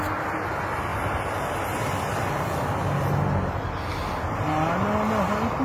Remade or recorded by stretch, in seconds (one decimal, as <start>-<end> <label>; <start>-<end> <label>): 0.0-5.6 recorded